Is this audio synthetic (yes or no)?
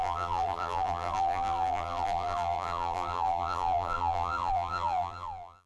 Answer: yes